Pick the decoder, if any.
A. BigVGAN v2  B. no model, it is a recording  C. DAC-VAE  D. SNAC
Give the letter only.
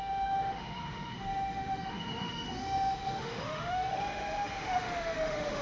C